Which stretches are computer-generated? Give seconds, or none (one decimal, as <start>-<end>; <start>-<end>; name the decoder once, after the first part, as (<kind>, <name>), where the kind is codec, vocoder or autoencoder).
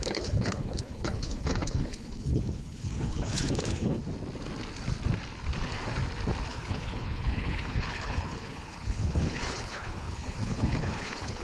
0.0-4.0 (codec, HILCodec); 6.5-11.4